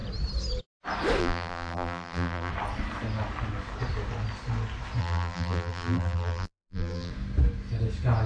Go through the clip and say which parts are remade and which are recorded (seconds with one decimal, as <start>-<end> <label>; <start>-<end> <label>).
0.0-1.2 recorded; 1.2-2.5 remade; 2.5-5.0 recorded; 5.0-7.1 remade; 7.1-8.3 recorded